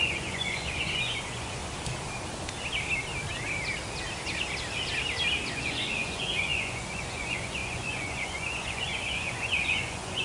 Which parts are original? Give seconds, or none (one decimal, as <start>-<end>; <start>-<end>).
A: 1.6-5.5